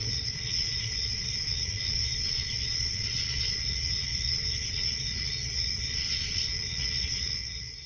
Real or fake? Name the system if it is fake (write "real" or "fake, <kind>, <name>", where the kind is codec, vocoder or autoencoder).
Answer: fake, vocoder, Vocos